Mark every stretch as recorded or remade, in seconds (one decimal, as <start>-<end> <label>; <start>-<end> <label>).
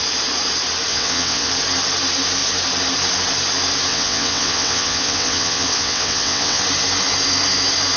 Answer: 0.0-0.9 recorded; 0.9-1.5 remade; 1.5-3.9 recorded; 3.9-6.6 remade; 6.6-8.0 recorded